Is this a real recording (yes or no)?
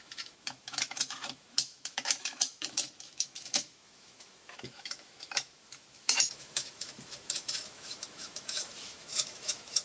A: no